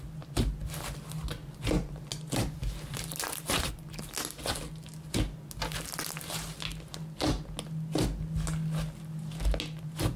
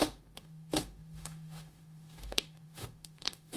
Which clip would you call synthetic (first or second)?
second